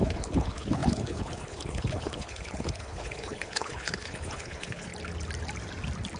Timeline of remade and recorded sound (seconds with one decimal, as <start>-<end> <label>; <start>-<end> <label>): 0.0-4.9 remade; 4.9-6.2 recorded